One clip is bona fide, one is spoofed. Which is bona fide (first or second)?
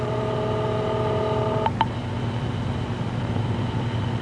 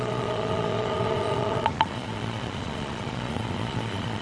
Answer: first